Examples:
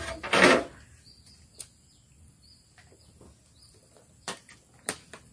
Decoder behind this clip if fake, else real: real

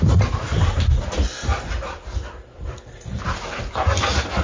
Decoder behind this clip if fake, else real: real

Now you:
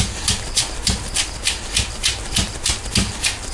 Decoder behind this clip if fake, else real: real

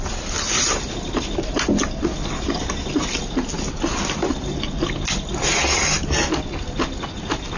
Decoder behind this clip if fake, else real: real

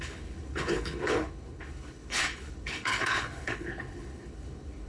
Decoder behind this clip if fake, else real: fake, codec, HILCodec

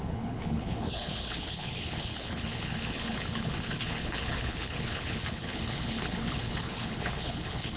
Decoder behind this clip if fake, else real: fake, codec, HILCodec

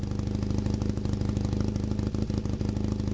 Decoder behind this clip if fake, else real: real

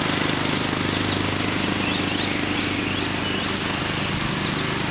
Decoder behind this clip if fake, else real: real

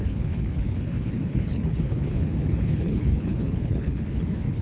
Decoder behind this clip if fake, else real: fake, codec, HILCodec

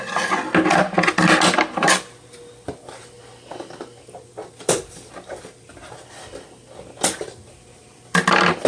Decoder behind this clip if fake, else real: real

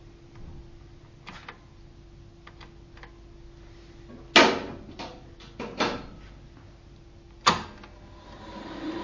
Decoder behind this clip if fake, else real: real